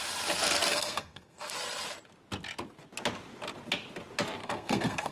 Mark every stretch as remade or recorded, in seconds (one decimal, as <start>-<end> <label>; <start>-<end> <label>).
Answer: 0.0-0.7 recorded; 0.7-1.5 remade; 1.5-4.4 recorded; 4.4-5.1 remade